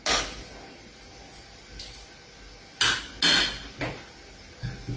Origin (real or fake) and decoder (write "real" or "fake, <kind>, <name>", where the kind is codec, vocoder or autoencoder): real